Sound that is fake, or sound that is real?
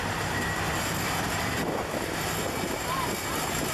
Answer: real